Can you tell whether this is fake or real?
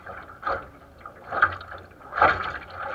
real